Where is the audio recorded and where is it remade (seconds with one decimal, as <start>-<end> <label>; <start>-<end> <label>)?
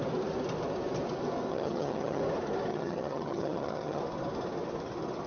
0.0-1.5 recorded; 1.5-2.2 remade; 2.2-2.7 recorded; 2.7-4.0 remade; 4.0-5.3 recorded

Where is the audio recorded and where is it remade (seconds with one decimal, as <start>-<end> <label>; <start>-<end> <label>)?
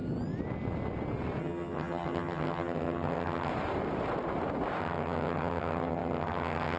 0.0-1.4 recorded; 1.4-3.5 remade; 3.5-4.8 recorded; 4.8-6.8 remade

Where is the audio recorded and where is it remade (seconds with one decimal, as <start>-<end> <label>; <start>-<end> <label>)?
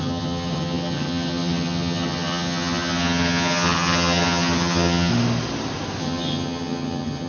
0.0-5.1 remade; 5.1-6.0 recorded; 6.0-7.3 remade